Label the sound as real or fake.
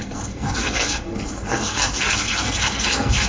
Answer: fake